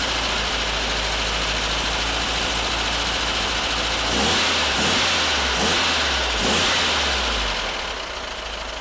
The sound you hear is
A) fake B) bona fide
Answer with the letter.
B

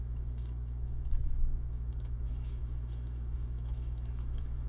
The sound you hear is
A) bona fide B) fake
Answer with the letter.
B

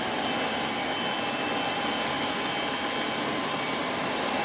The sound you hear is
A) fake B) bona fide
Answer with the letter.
B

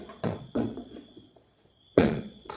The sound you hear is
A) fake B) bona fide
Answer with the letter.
A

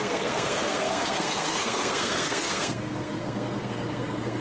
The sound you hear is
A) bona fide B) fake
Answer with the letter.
B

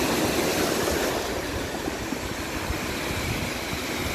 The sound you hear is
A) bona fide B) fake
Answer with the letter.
A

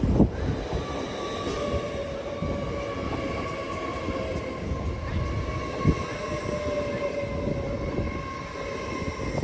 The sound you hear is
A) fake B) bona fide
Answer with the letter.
B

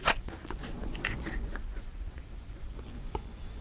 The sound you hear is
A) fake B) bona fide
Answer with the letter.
A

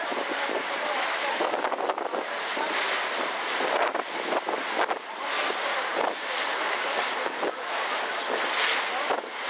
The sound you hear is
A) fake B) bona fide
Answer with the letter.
B